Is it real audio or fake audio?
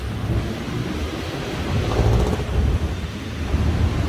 real